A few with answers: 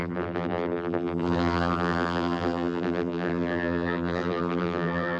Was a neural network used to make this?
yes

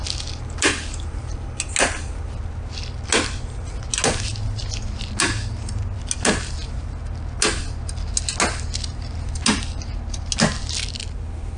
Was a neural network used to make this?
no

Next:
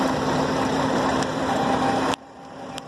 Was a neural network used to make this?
yes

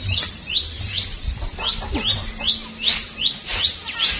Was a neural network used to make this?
no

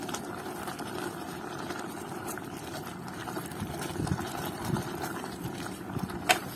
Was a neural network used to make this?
yes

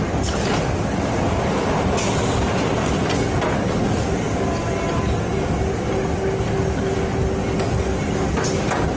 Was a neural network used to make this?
no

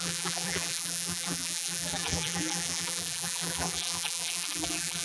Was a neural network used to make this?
yes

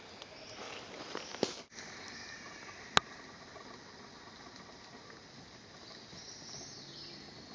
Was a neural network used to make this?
no